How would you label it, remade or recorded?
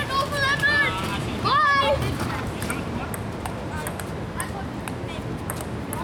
recorded